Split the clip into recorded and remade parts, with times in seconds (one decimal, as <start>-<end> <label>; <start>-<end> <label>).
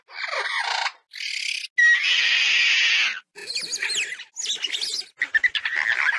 0.0-6.2 recorded